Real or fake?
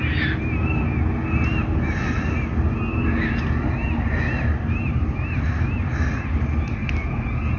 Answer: real